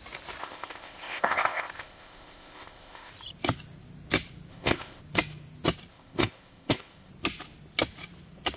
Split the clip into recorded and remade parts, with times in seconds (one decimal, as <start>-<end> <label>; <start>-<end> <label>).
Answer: 0.0-0.4 recorded; 0.4-3.1 remade; 3.1-4.5 recorded; 4.5-5.0 remade; 5.0-5.9 recorded; 5.9-7.1 remade; 7.1-8.6 recorded